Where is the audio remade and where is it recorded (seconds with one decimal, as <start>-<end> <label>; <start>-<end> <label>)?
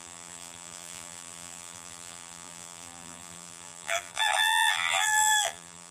0.0-5.9 remade